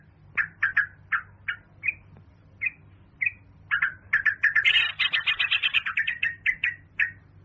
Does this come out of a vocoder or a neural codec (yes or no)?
no